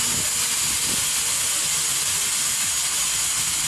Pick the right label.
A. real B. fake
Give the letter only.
A